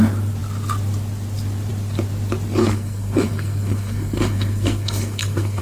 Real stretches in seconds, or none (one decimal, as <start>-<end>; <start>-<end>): 0.0-2.6